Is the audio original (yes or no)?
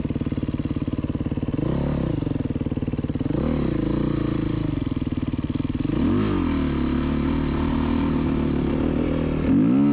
yes